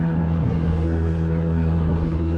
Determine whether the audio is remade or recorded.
remade